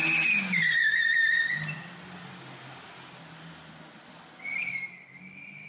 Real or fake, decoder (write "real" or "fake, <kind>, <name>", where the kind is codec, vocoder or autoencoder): real